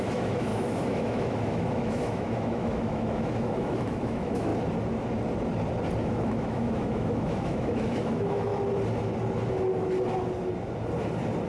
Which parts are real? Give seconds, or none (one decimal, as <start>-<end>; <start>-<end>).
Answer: 4.5-6.0; 8.5-11.5